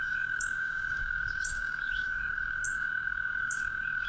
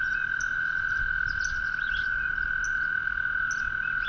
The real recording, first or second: second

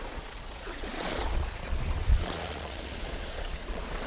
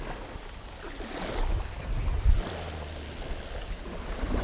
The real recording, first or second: second